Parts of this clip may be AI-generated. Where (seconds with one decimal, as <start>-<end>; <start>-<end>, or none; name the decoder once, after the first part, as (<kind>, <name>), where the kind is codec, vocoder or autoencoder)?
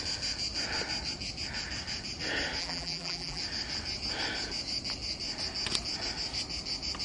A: 2.6-3.4 (vocoder, BigVGAN v2)